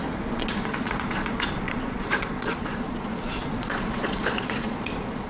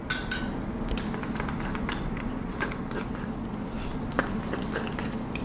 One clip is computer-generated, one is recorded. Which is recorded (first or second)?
second